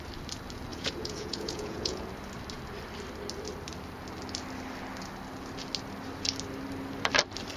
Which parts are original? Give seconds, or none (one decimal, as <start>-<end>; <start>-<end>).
0.0-0.7; 2.0-7.6